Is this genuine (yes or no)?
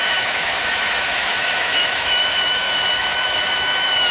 no